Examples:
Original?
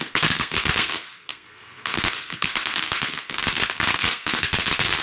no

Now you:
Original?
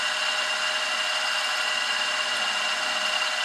yes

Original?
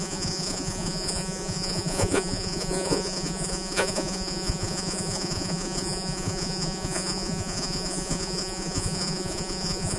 no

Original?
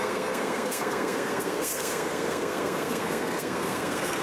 no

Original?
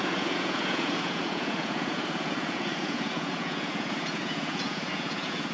no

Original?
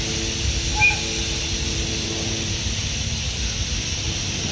yes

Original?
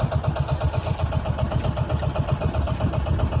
yes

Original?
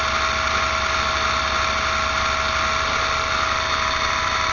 yes